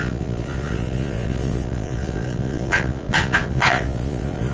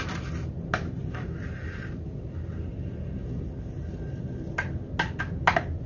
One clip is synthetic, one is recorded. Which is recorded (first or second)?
second